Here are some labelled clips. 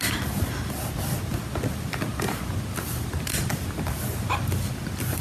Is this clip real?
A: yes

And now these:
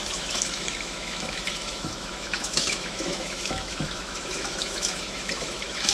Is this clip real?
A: no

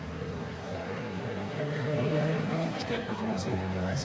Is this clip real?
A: no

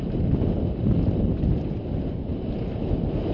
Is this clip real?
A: yes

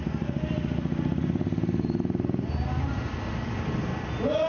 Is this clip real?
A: yes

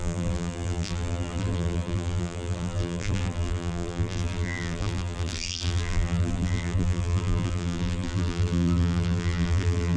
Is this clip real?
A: no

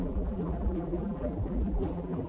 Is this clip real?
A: no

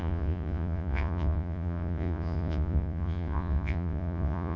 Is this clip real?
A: no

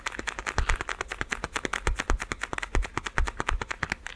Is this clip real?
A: yes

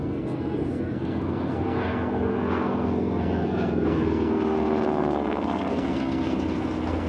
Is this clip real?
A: no